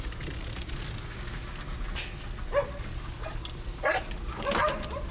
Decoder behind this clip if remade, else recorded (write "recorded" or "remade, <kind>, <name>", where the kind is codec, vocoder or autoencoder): recorded